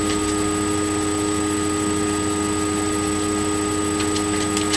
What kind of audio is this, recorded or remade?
recorded